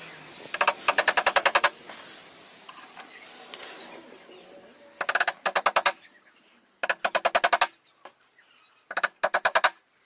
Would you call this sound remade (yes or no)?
no